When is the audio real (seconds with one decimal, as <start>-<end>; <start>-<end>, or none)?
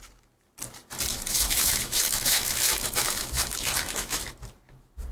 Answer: 0.0-1.1; 4.2-5.1